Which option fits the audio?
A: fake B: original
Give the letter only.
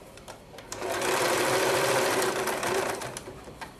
A